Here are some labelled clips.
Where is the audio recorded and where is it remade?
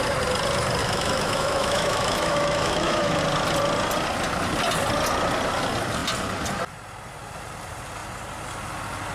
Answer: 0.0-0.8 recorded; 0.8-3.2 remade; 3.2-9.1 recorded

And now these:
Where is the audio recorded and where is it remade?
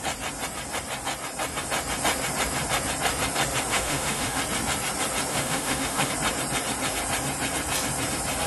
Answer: 0.0-3.7 recorded; 3.7-4.4 remade; 4.4-5.3 recorded; 5.3-6.1 remade; 6.1-8.5 recorded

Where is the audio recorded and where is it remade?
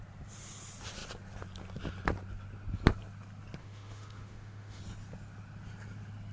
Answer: 0.0-3.6 recorded; 3.6-4.8 remade; 4.8-6.3 recorded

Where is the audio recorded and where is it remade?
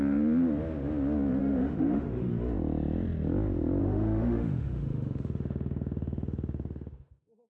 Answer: 0.0-1.4 recorded; 1.4-2.3 remade; 2.3-3.8 recorded; 3.8-7.5 remade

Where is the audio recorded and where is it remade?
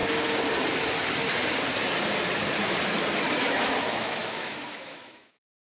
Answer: 0.0-3.4 recorded; 3.4-5.7 remade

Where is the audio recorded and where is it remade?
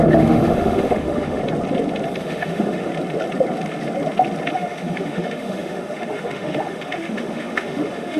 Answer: 0.0-1.4 remade; 1.4-2.2 recorded; 2.2-2.9 remade; 2.9-4.5 recorded; 4.5-8.2 remade